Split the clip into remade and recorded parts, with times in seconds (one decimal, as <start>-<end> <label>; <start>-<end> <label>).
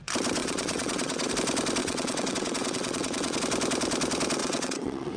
0.0-0.4 recorded; 0.4-1.3 remade; 1.3-1.8 recorded; 1.8-3.4 remade; 3.4-4.4 recorded; 4.4-5.2 remade